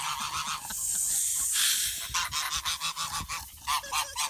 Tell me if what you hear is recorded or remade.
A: recorded